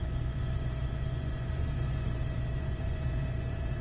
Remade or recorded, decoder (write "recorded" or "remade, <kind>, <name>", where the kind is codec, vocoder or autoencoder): remade, vocoder, Vocos